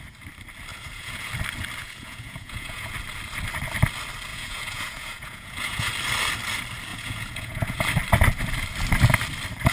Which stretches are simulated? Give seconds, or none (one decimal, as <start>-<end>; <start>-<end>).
0.7-1.3; 1.8-2.9; 4.3-5.9; 6.9-7.8